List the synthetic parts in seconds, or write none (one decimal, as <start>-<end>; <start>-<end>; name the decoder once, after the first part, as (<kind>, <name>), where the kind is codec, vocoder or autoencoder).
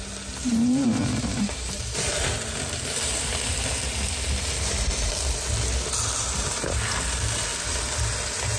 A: 0.4-2.2 (vocoder, BigVGAN v2)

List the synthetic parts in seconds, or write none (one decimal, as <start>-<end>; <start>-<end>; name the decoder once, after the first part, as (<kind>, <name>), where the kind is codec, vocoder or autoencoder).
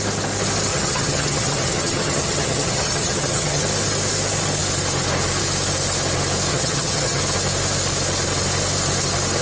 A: 0.7-3.6 (vocoder, HiFi-GAN); 6.5-7.2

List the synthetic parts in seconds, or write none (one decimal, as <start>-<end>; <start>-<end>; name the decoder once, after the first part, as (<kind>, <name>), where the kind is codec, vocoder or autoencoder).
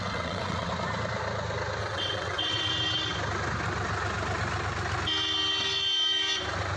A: 0.0-0.7 (vocoder, WaveNeXt); 1.8-2.7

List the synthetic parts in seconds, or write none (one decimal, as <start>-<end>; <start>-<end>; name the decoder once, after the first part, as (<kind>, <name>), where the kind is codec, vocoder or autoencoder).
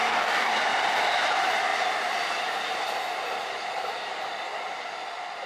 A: 0.0-0.5 (codec, DAC)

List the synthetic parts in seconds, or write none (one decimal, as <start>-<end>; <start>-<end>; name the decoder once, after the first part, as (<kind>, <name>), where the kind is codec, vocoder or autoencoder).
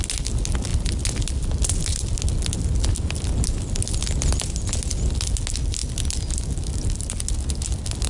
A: none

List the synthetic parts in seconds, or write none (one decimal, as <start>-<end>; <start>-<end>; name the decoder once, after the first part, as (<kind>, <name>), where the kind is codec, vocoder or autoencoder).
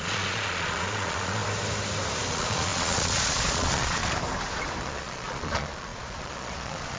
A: 0.0-1.4 (vocoder, Vocos); 2.3-4.0; 4.8-7.0